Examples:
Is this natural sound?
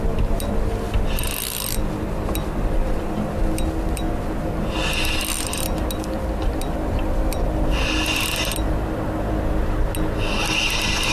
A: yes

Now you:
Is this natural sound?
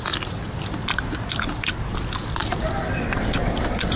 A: no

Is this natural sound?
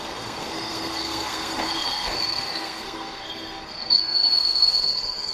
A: no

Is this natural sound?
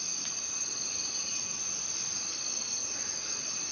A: yes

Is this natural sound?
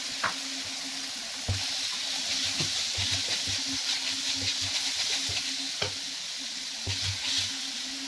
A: yes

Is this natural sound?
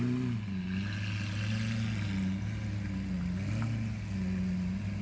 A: yes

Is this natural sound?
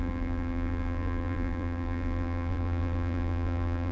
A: no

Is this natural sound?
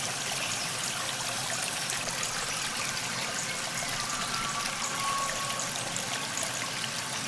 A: yes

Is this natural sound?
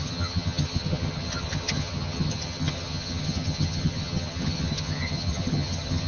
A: no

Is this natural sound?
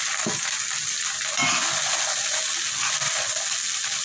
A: yes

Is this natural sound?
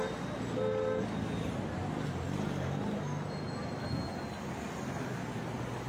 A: yes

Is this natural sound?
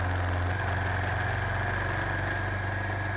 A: yes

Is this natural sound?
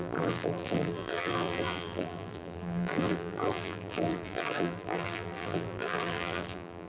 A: no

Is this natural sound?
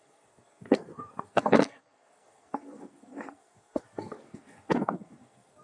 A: no